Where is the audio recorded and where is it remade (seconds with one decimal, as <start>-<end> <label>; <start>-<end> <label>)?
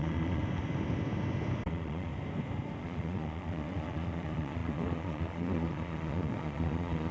0.0-0.4 remade; 0.4-1.7 recorded; 1.7-2.1 remade; 2.1-2.8 recorded; 2.8-7.1 remade